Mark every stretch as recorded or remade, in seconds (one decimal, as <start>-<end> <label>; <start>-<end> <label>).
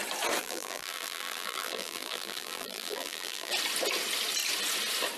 0.0-0.4 recorded; 0.4-3.5 remade; 3.5-5.2 recorded